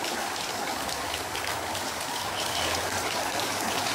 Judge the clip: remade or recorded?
remade